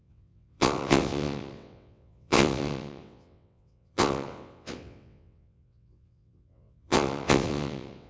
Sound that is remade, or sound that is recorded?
remade